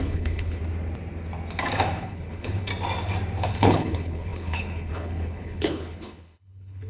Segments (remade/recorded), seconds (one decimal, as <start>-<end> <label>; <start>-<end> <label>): 0.0-0.6 remade; 0.6-1.9 recorded; 1.9-2.7 remade; 2.7-3.5 recorded; 3.5-6.9 remade